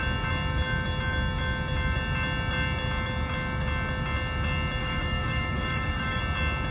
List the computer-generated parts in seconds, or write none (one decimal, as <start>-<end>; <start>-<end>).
4.8-6.2